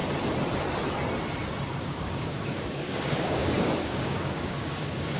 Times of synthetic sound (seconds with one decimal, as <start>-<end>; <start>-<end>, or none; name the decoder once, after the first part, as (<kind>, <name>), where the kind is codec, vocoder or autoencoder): 1.8-5.2 (codec, DAC)